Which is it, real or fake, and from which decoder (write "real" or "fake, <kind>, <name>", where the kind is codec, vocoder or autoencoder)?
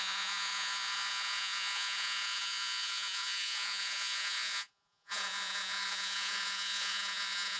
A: fake, vocoder, Vocos